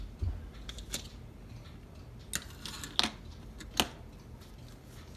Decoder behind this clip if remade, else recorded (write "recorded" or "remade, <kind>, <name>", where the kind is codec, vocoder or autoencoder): recorded